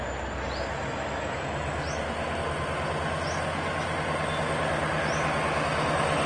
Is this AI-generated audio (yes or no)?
no